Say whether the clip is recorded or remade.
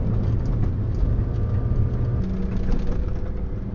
recorded